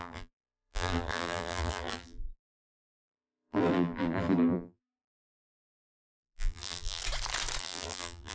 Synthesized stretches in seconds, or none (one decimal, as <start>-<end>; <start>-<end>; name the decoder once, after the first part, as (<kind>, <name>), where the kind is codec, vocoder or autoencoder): 0.0-7.0 (vocoder, BigVGAN v2); 7.6-8.3

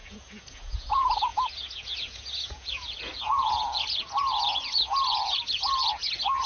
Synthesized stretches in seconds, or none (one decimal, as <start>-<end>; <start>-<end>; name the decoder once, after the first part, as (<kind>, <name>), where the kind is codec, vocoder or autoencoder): 0.0-6.5 (vocoder, Vocos)

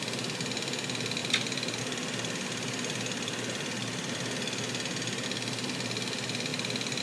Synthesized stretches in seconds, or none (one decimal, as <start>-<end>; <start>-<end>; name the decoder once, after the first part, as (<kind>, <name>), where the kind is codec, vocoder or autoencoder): none

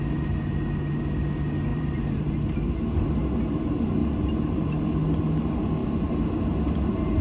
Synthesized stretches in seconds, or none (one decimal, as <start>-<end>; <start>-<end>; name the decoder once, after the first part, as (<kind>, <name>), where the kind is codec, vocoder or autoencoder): 1.7-2.3 (vocoder, BigVGAN v2); 4.0-4.8; 5.8-6.3

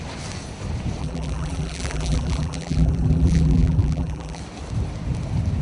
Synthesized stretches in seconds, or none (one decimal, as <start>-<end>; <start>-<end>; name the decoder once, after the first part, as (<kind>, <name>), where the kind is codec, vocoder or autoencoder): 1.0-4.4 (vocoder, BigVGAN v2)

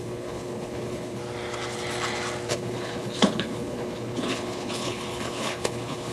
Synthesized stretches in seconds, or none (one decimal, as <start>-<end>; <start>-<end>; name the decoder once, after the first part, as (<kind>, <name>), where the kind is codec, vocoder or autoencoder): 0.0-1.2 (codec, HILCodec); 2.5-6.1